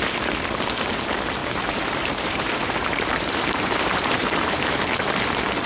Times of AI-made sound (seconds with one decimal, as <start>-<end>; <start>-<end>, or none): 1.4-4.8